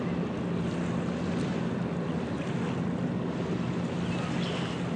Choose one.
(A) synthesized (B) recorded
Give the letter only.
B